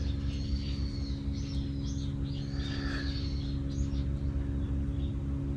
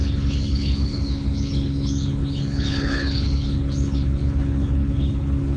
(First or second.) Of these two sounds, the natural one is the first